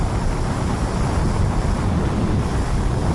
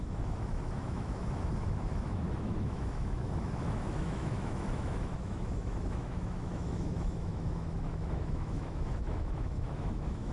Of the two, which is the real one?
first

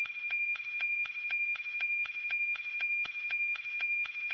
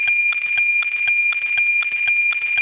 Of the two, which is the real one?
second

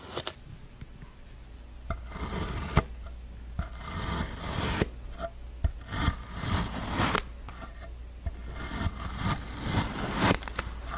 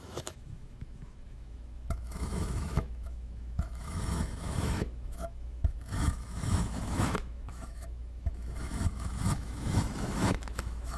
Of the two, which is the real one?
first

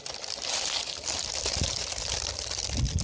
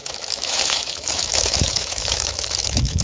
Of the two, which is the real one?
first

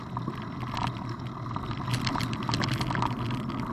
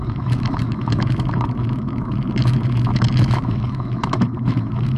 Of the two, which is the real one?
first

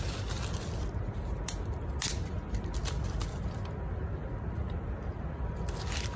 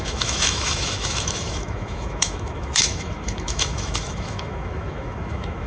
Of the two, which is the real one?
first